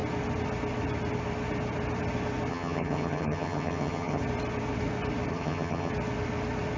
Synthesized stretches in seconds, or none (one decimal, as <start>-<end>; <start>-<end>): 2.5-4.2; 5.3-5.9